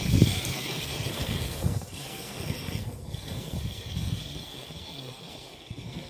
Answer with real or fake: fake